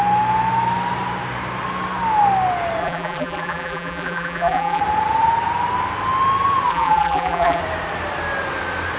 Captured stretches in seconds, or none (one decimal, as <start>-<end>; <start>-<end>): 0.0-2.8; 4.8-6.7; 7.6-9.0